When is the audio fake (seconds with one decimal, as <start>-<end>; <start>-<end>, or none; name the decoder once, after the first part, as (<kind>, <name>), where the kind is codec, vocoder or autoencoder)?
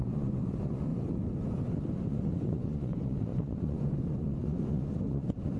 0.0-0.9 (vocoder, Vocos); 2.1-5.6